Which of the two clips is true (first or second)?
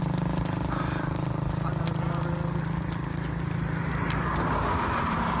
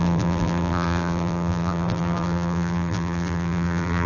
first